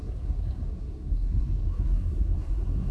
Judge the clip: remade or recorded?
remade